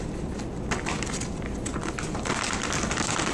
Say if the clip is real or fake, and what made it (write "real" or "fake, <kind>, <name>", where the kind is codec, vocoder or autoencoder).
real